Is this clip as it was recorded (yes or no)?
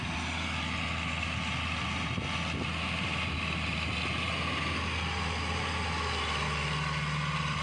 yes